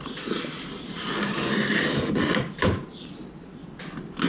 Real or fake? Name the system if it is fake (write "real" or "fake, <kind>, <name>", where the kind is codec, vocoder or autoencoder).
real